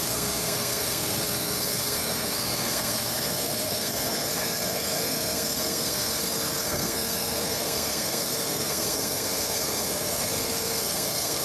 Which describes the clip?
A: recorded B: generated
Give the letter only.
B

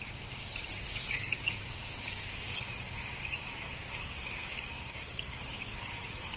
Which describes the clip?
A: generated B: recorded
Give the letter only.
A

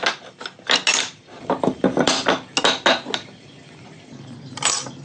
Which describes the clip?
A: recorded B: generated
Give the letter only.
A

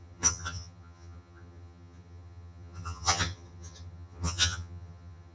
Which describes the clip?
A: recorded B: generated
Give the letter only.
B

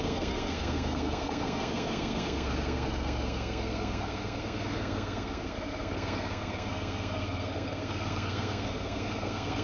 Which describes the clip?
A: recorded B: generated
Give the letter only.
B